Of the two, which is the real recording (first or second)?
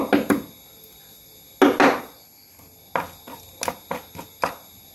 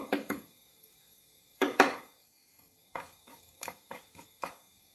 first